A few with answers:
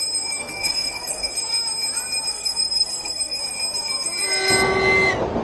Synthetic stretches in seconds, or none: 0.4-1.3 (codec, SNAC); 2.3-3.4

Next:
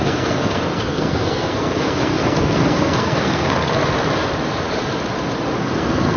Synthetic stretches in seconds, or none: 0.0-3.8 (codec, SNAC); 5.6-6.2

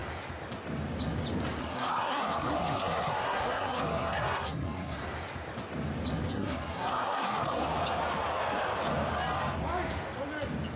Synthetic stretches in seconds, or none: 1.6-5.0 (codec, SNAC); 6.3-7.6

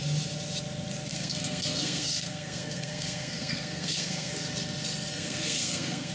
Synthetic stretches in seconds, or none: 1.1-4.3 (codec, SNAC); 5.1-6.1